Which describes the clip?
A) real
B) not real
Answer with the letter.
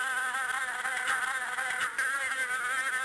A